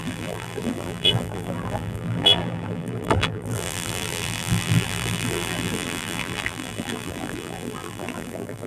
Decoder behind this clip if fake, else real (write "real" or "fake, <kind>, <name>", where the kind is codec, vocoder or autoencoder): fake, vocoder, BigVGAN v2